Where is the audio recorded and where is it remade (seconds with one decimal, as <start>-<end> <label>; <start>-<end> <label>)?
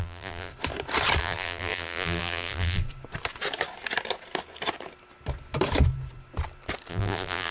0.0-0.5 remade; 0.5-1.2 recorded; 1.2-2.8 remade; 2.8-6.9 recorded; 6.9-7.5 remade